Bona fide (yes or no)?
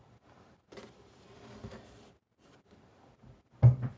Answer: yes